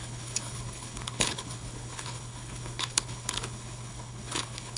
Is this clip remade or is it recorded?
remade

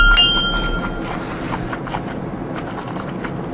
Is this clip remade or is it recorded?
recorded